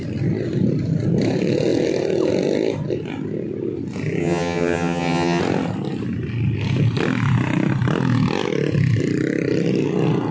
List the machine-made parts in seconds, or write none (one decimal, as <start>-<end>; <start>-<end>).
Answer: 4.2-5.4

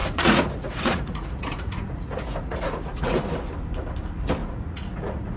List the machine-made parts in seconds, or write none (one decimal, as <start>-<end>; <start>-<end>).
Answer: 0.0-3.2; 4.4-5.4